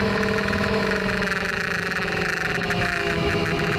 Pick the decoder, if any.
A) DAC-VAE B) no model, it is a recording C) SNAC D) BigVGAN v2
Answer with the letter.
A